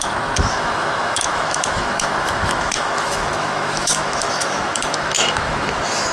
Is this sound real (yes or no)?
no